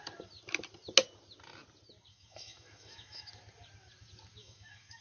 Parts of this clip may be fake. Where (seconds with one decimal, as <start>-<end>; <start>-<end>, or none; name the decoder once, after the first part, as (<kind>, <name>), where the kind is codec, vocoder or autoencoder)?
2.1-3.3 (autoencoder, DAC-VAE); 4.4-5.0